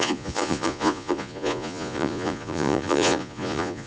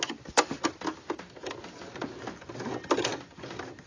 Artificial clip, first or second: first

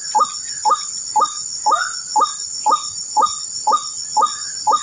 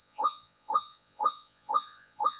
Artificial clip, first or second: second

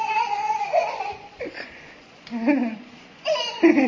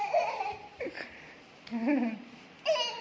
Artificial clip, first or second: first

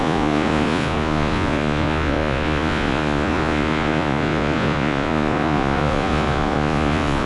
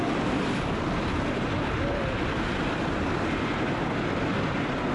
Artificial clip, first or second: first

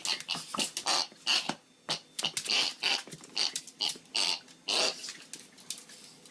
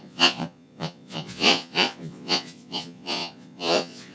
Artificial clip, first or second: second